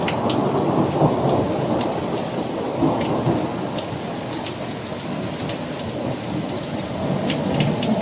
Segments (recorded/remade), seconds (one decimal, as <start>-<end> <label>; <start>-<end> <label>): 0.0-0.4 recorded; 0.4-0.9 remade; 0.9-8.0 recorded